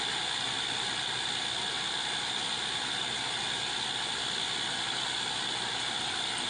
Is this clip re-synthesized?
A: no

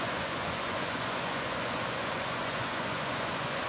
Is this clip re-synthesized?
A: yes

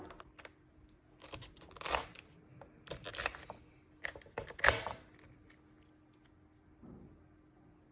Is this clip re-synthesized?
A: no